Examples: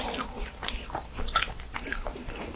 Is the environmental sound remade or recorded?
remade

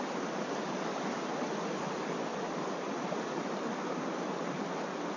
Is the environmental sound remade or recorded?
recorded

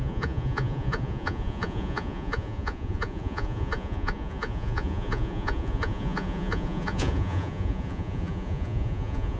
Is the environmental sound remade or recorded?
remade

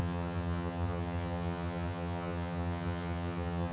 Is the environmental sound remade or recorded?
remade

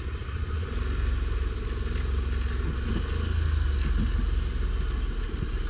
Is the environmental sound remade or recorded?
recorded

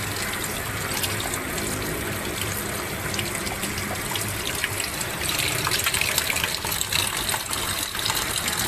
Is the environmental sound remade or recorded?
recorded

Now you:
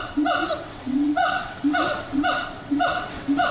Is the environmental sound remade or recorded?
remade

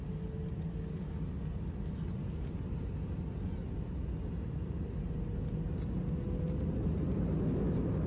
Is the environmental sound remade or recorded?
recorded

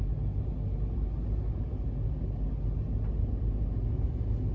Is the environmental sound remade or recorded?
recorded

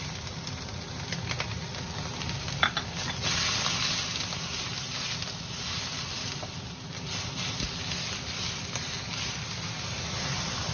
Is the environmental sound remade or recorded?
recorded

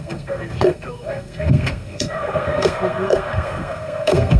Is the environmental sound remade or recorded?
remade